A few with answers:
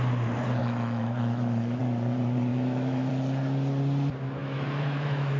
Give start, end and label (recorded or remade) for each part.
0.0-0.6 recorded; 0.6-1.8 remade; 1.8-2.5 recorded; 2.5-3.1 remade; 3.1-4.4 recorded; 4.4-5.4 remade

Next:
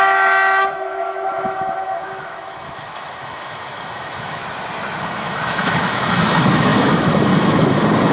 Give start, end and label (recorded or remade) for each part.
0.0-4.4 remade; 4.4-5.0 recorded; 5.0-8.1 remade

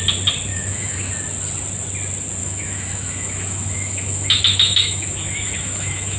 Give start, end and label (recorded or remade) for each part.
0.0-0.5 recorded; 0.5-1.1 remade; 1.1-2.4 recorded; 2.4-6.2 remade

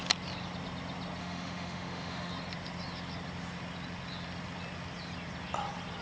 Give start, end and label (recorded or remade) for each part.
0.0-1.2 recorded; 1.2-2.3 remade; 2.3-6.0 recorded

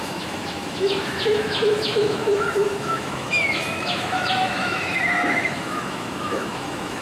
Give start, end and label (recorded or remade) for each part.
0.0-7.0 remade

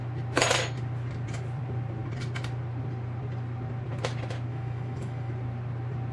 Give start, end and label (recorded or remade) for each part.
0.0-4.5 recorded; 4.5-5.3 remade; 5.3-6.1 recorded

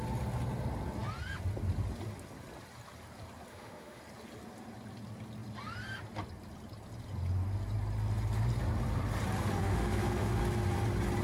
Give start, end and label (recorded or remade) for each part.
0.0-3.5 recorded; 3.5-4.0 remade; 4.0-9.6 recorded; 9.6-10.4 remade; 10.4-11.2 recorded